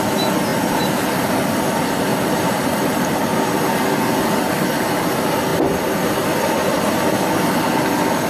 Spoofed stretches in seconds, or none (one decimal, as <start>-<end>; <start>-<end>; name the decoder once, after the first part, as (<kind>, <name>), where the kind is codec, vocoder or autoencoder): 0.5-1.6 (vocoder, BigVGAN v2); 2.1-3.4; 5.5-6.9